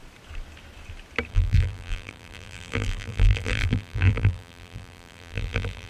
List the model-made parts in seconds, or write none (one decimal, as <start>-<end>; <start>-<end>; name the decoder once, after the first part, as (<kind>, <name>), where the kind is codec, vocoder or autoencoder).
1.3-5.9 (vocoder, BigVGAN v2)